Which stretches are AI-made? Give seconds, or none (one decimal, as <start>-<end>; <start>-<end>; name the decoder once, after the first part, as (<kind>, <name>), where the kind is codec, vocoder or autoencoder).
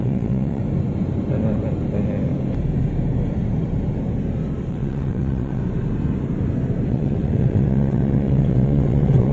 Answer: 0.0-0.6 (vocoder, WaveNeXt); 4.7-5.6; 6.9-9.3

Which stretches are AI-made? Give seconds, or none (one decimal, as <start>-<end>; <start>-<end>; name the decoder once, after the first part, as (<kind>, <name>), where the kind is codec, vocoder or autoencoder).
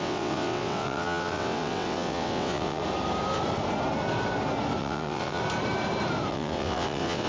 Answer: 0.0-2.8 (vocoder, WaveNeXt); 4.8-5.4; 6.3-7.3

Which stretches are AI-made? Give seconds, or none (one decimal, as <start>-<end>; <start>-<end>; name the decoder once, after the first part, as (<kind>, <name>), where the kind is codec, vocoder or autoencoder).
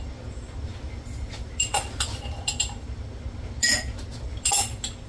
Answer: none